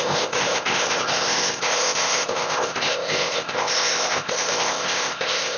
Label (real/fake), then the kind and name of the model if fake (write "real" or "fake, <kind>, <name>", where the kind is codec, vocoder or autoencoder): fake, codec, ZipCodec